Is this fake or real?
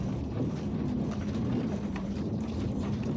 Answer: real